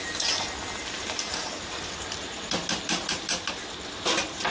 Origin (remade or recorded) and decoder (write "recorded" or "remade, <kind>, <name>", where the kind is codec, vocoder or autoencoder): recorded